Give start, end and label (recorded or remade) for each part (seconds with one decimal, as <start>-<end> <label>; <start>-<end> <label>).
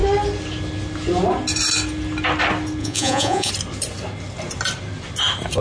0.0-2.8 recorded; 2.8-3.5 remade; 3.5-5.6 recorded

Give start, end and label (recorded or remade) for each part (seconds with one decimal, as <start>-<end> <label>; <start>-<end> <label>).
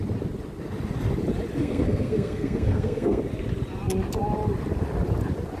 0.0-1.6 recorded; 1.6-3.2 remade; 3.2-5.6 recorded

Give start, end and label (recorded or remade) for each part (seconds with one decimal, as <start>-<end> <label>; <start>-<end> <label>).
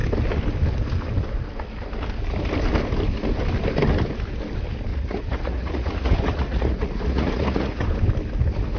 0.0-4.9 recorded; 4.9-7.8 remade; 7.8-8.8 recorded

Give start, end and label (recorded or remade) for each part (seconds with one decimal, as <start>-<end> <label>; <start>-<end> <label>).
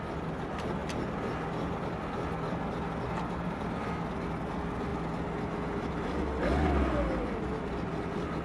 0.0-8.4 recorded